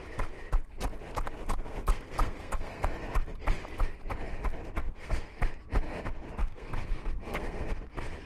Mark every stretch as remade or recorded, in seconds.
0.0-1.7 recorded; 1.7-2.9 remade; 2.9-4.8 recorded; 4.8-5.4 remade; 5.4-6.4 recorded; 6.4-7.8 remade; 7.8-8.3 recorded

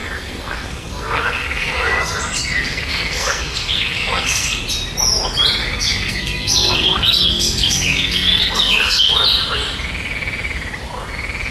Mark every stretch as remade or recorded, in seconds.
0.0-4.6 remade; 4.6-5.6 recorded; 5.6-9.1 remade; 9.1-11.5 recorded

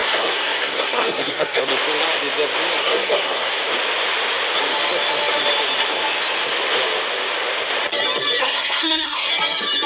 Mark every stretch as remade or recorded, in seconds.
0.0-1.6 remade; 1.6-2.8 recorded; 2.8-3.6 remade; 3.6-8.4 recorded; 8.4-9.3 remade; 9.3-9.9 recorded

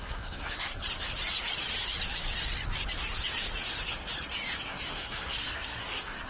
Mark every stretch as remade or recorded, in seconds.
0.0-0.8 remade; 0.8-4.6 recorded; 4.6-6.3 remade

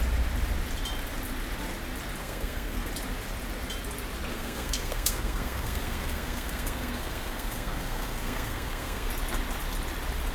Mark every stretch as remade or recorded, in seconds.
0.0-2.2 recorded; 2.2-2.9 remade; 2.9-4.3 recorded; 4.3-9.1 remade; 9.1-10.3 recorded

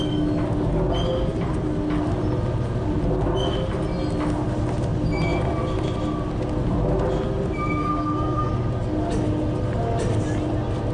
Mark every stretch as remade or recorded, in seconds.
0.0-7.8 recorded; 7.8-8.5 remade; 8.5-10.9 recorded